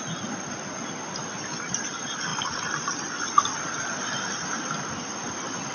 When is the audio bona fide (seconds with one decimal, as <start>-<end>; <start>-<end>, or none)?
0.0-5.7